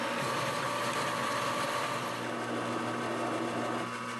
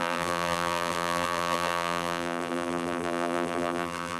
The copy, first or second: second